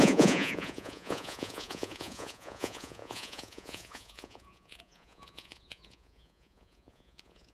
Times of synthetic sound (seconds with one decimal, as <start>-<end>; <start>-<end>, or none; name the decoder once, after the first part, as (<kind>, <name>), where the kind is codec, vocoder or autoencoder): 0.0-7.5 (vocoder, Vocos)